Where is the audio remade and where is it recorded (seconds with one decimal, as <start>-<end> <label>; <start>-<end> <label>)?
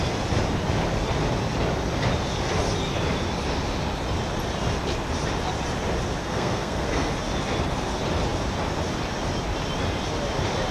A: 0.0-6.2 recorded; 6.2-7.1 remade; 7.1-10.7 recorded